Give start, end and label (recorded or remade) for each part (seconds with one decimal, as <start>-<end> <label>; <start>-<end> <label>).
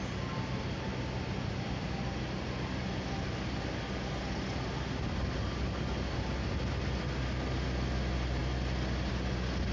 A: 0.0-9.7 recorded